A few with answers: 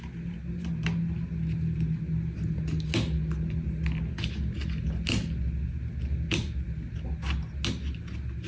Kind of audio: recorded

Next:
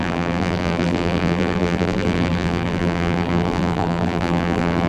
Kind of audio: remade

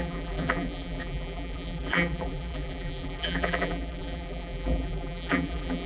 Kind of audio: remade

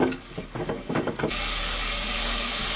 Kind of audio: remade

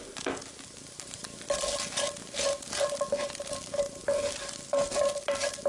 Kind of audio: recorded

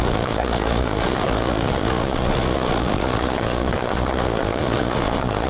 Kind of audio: remade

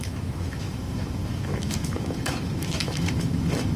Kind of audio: remade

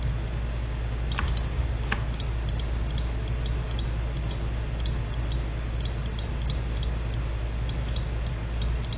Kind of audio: recorded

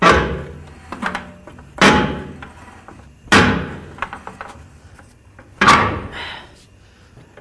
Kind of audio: recorded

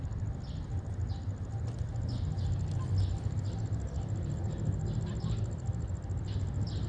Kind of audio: recorded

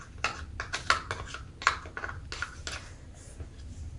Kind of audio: recorded